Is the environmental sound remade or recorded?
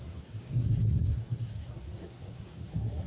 remade